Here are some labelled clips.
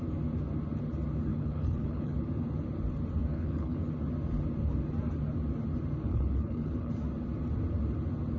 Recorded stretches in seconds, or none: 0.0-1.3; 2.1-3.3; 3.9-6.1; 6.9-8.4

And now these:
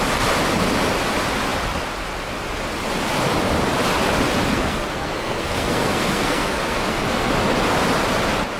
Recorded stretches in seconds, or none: 0.0-4.5; 7.3-8.6